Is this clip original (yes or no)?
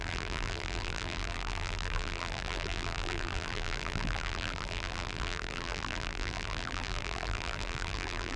no